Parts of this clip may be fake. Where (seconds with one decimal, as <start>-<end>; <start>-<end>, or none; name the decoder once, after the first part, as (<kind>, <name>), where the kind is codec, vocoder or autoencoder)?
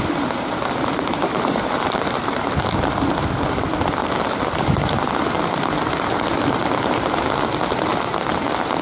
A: 0.0-7.9 (vocoder, BigVGAN v2); 8.4-8.8